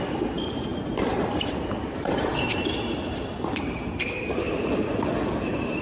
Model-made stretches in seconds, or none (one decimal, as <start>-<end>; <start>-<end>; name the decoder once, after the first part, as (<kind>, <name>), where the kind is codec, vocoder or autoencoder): 0.7-4.2 (vocoder, BigVGAN v2)